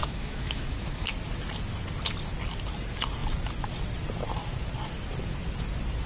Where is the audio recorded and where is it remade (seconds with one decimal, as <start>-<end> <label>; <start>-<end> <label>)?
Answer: 0.0-1.1 remade; 1.1-6.1 recorded